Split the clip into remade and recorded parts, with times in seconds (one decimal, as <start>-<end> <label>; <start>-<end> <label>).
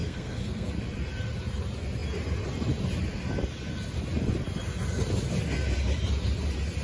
0.0-0.7 remade; 0.7-6.8 recorded